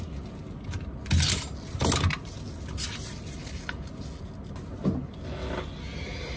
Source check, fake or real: real